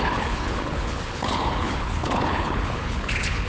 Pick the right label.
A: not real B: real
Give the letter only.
A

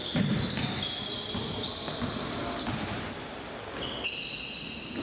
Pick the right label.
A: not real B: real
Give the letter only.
B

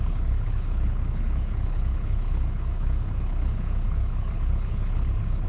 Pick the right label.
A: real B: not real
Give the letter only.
B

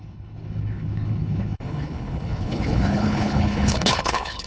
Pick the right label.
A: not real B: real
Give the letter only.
A